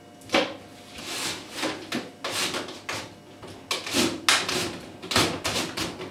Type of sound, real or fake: real